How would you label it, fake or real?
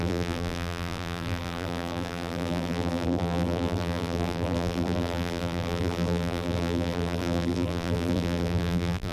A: fake